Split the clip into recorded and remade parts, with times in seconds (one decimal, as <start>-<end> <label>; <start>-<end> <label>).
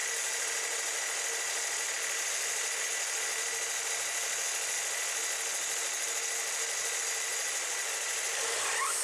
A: 0.0-9.0 recorded